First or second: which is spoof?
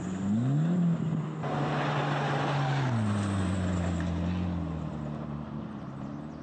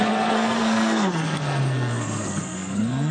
second